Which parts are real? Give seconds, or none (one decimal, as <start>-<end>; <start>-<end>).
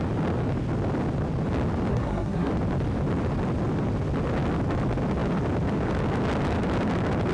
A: 0.0-1.9; 2.5-7.3